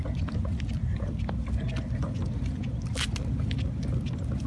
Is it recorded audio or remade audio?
recorded